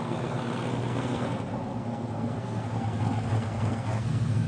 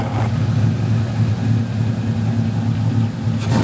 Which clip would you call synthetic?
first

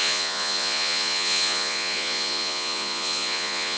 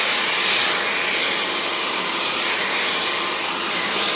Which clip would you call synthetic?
first